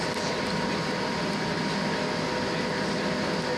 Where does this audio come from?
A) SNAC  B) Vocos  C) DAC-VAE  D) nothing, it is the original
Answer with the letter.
D